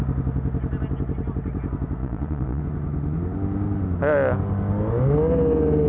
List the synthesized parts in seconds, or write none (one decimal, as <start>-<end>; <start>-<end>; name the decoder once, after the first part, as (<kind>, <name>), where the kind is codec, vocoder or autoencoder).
2.0-2.6 (vocoder, Vocos)